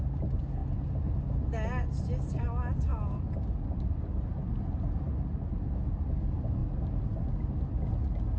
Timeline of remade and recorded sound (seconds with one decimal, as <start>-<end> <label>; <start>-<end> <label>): 0.0-8.4 recorded